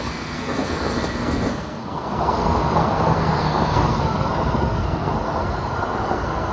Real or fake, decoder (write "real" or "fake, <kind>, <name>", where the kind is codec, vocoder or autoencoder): fake, codec, SNAC